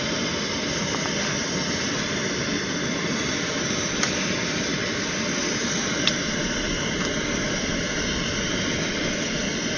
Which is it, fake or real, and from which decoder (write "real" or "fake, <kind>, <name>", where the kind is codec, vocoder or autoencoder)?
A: real